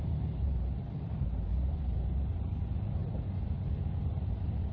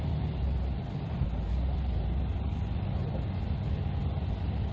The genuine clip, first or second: second